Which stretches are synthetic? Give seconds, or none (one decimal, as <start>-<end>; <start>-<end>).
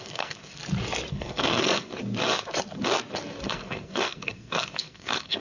0.0-0.6; 1.1-1.9; 3.5-5.4